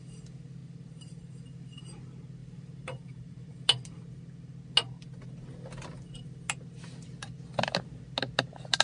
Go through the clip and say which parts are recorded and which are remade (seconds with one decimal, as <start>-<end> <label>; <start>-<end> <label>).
0.0-0.6 recorded; 0.6-1.2 remade; 1.2-2.4 recorded; 2.4-3.5 remade; 3.5-8.8 recorded